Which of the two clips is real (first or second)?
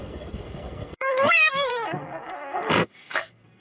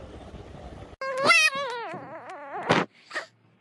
second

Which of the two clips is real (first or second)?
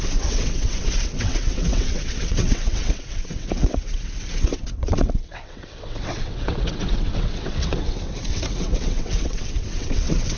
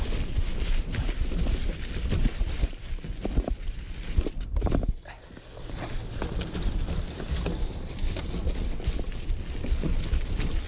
second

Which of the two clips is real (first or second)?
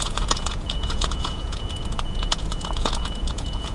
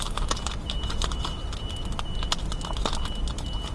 second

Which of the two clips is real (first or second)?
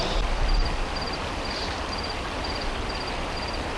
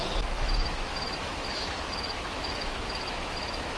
first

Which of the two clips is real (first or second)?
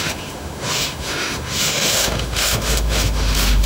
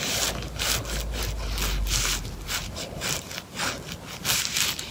second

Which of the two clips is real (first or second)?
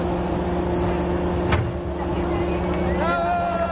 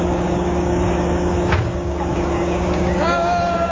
first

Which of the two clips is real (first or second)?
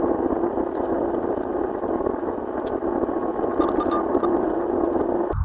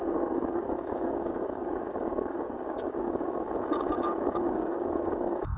first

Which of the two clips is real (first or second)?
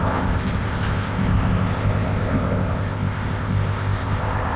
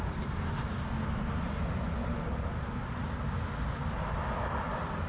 second